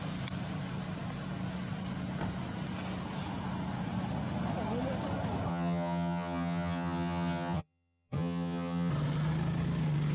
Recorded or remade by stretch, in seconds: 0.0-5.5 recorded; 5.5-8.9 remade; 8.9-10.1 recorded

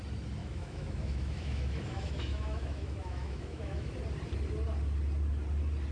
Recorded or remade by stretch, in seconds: 0.0-0.4 recorded; 0.4-3.9 remade; 3.9-5.9 recorded

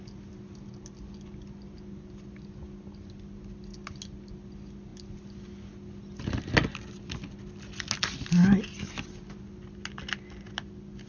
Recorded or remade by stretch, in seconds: 0.0-11.1 recorded